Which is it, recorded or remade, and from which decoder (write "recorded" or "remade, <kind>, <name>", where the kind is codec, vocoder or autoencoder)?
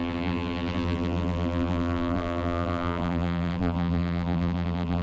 remade, vocoder, BigVGAN v2